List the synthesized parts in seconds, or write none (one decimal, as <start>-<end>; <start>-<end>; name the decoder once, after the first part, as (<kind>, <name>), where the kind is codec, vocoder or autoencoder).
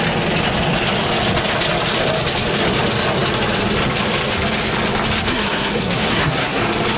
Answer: 5.3-6.6 (codec, SNAC)